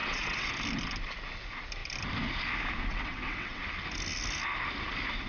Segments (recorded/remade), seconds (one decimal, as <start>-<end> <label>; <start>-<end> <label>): 0.0-0.5 remade; 0.5-2.9 recorded; 2.9-3.6 remade; 3.6-5.3 recorded